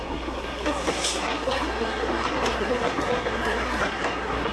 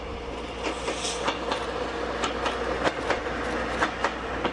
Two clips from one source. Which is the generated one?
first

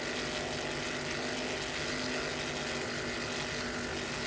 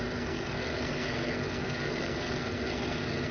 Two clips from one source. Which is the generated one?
second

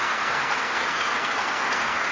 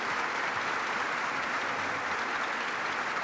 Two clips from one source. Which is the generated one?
first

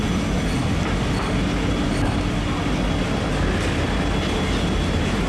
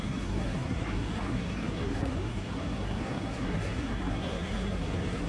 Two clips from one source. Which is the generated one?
second